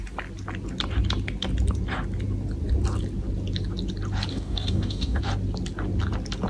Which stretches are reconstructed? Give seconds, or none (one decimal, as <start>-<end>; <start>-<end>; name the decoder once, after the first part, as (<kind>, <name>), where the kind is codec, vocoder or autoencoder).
4.3-5.2 (codec, DAC)